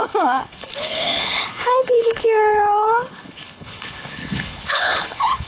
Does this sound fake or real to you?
fake